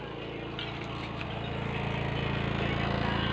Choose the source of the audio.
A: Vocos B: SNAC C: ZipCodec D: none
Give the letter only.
D